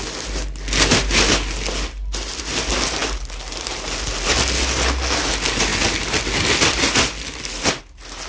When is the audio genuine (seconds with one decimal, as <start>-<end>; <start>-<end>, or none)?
0.0-8.3